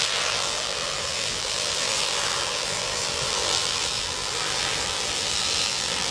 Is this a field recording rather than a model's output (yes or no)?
no